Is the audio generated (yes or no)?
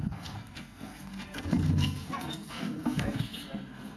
yes